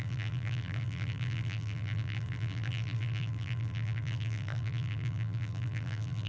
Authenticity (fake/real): fake